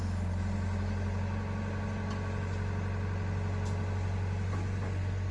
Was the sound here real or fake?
real